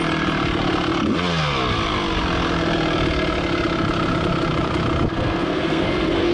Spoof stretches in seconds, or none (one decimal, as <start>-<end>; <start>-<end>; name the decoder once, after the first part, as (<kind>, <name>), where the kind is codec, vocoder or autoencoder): 5.1-6.3 (codec, SNAC)